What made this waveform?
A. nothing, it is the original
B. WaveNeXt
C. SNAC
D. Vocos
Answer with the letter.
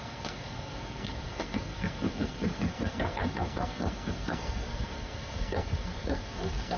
C